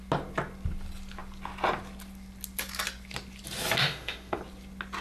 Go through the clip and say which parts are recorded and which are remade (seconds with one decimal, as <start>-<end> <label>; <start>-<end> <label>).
0.0-3.8 recorded; 3.8-4.4 remade; 4.4-5.0 recorded